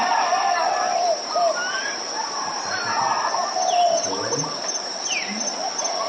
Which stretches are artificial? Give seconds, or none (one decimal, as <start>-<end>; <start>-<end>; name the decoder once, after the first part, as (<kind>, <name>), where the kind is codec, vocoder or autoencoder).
none